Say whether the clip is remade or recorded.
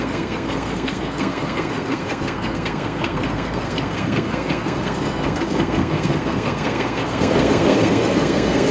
remade